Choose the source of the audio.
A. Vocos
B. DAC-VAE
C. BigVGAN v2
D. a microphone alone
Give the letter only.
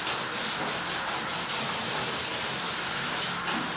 D